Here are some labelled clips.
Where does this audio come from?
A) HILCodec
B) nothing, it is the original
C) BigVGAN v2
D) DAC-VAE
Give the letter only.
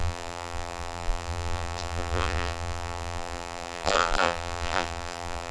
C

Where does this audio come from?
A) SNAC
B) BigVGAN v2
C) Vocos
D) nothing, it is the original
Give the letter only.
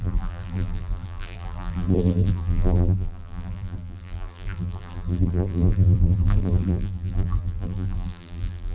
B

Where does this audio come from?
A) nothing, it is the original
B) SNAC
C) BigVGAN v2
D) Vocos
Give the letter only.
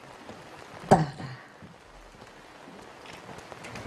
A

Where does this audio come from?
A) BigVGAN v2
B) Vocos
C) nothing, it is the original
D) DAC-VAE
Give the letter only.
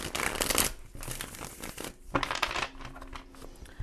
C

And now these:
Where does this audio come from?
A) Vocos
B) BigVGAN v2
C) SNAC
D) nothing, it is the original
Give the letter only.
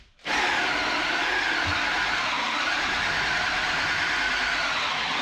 D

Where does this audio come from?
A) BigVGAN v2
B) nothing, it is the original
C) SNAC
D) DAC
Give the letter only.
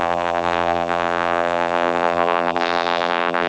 A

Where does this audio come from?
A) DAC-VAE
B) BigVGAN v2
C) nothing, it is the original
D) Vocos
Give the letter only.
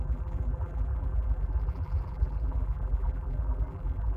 B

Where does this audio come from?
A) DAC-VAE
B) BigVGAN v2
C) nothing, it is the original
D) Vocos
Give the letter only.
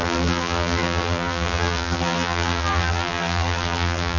B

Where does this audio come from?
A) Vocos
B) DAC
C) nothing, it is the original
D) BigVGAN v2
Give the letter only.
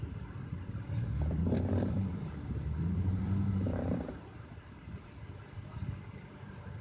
D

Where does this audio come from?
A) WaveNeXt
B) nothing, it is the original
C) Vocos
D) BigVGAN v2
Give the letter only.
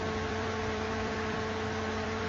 D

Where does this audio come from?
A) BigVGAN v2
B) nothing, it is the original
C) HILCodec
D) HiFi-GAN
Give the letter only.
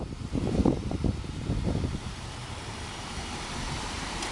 A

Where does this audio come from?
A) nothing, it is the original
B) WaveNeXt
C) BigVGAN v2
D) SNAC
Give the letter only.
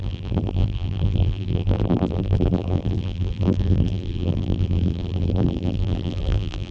C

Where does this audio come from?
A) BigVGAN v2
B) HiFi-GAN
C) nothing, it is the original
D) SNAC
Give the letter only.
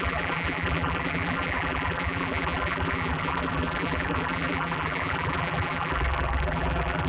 A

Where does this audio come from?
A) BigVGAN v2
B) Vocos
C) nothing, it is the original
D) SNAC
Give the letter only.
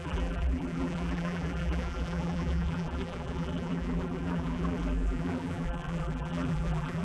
A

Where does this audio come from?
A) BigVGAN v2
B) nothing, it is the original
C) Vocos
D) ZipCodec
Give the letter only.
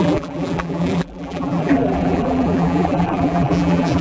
A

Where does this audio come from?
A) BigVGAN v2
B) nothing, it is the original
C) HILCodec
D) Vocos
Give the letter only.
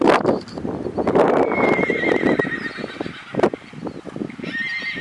B